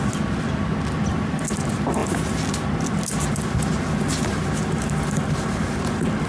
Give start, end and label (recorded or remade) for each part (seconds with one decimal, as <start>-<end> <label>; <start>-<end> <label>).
0.0-6.3 recorded